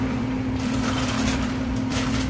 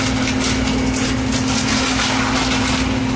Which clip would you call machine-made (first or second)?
first